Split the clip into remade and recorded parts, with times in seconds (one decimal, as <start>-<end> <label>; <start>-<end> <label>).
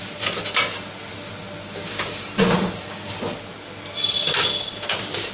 0.0-1.7 recorded; 1.7-3.1 remade; 3.1-5.3 recorded